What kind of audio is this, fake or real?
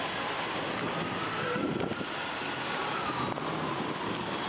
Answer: real